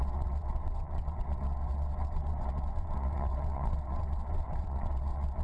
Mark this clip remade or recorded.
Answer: remade